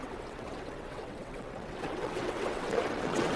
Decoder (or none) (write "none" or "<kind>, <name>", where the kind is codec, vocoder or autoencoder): vocoder, WaveNeXt